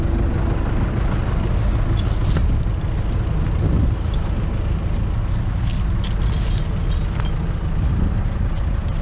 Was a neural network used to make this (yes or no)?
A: no